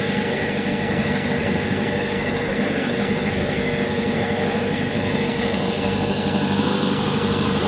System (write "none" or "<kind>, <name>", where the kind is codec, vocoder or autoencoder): codec, SNAC